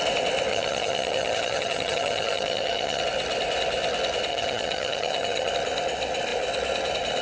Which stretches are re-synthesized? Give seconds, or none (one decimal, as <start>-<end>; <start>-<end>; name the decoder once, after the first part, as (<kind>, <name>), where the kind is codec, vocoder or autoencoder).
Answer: 0.5-3.0 (vocoder, HiFi-GAN); 4.3-5.5